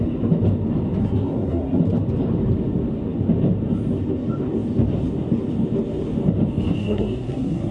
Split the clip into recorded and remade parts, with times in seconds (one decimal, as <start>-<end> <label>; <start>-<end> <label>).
0.0-1.0 recorded; 1.0-1.8 remade; 1.8-6.8 recorded; 6.8-7.7 remade